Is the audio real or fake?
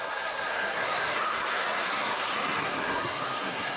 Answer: fake